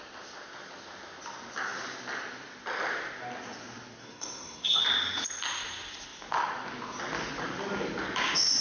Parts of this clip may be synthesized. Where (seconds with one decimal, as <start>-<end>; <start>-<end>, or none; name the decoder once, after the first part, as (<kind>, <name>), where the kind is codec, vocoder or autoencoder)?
4.0-4.8 (codec, SNAC)